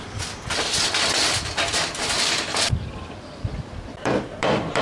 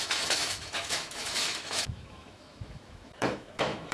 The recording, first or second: first